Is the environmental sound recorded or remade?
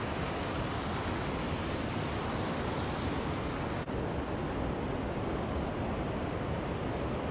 recorded